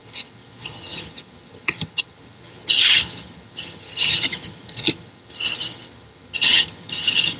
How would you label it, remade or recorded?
remade